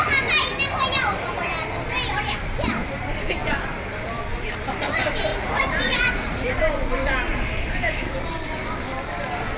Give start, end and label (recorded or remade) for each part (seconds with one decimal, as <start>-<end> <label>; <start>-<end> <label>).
0.0-5.3 recorded; 5.3-6.5 remade; 6.5-9.6 recorded